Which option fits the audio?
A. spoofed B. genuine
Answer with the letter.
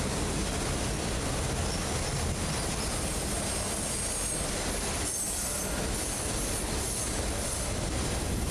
B